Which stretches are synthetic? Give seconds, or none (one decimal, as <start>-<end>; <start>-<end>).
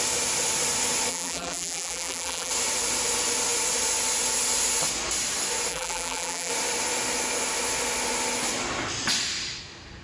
1.1-2.5; 5.7-6.5